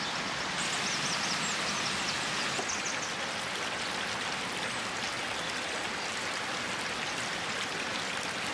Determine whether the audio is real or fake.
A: real